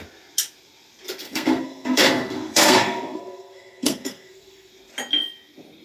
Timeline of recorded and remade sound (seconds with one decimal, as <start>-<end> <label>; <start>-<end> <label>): 0.0-1.2 recorded; 1.2-4.7 remade; 4.7-5.8 recorded